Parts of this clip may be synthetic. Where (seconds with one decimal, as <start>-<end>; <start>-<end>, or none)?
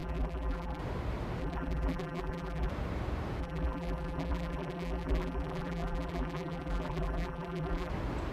0.0-0.8; 1.4-2.7; 3.4-7.9